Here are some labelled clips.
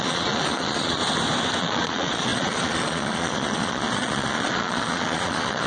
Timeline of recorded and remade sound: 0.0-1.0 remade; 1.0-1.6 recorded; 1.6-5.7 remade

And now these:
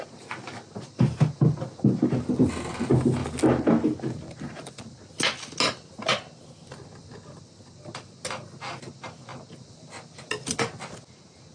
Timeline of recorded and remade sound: 0.0-11.5 recorded